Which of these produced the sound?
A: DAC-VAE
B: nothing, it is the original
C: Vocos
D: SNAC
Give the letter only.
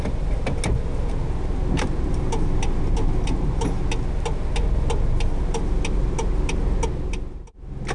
B